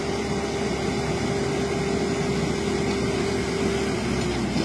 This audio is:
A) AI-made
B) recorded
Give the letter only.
B